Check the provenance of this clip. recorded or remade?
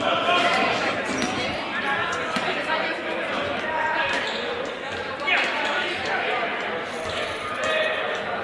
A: recorded